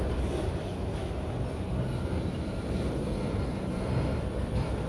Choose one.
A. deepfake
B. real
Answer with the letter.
A